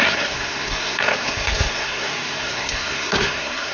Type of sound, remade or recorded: remade